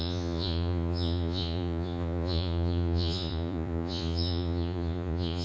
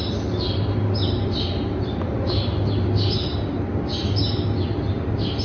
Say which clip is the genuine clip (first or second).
second